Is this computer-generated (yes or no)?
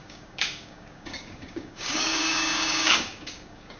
yes